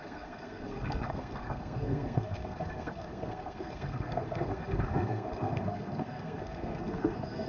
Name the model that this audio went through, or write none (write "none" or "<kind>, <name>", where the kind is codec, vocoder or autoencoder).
codec, SNAC